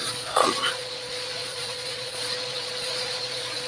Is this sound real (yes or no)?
no